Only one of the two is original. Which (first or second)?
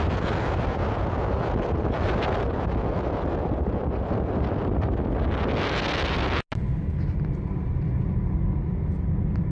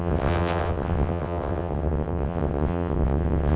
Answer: first